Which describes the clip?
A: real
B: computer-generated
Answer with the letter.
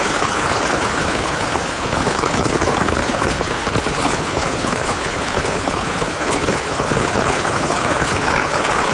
B